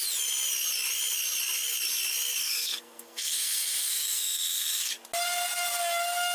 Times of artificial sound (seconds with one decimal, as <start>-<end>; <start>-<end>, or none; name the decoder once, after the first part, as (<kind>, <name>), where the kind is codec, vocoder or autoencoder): 2.4-4.9 (codec, SNAC)